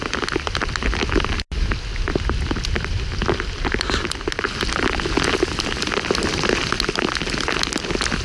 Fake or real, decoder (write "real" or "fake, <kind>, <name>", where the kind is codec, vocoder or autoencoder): real